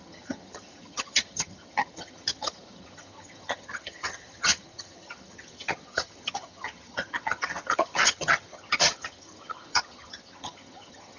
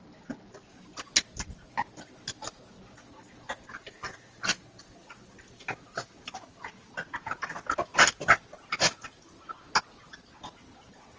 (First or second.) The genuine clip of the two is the second